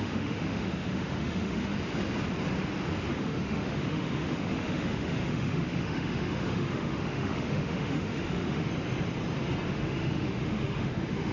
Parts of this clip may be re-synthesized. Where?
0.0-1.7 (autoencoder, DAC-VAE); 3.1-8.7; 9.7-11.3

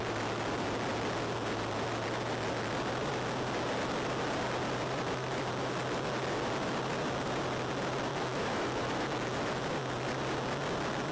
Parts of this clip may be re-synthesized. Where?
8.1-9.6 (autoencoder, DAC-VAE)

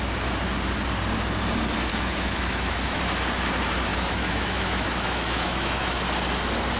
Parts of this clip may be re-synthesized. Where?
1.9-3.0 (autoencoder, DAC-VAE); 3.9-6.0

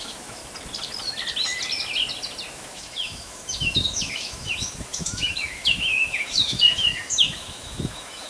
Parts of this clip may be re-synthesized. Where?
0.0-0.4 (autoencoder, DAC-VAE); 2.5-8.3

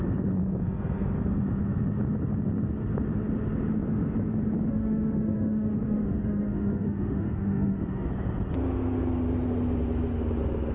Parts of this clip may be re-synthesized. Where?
4.7-8.1 (autoencoder, DAC-VAE)

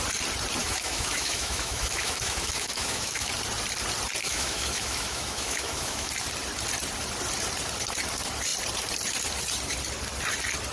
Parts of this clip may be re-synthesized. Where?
0.6-3.3 (autoencoder, DAC-VAE); 4.2-6.1